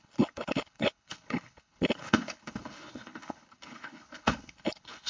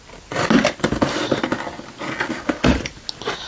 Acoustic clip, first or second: second